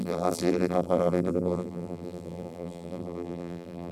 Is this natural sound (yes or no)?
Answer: no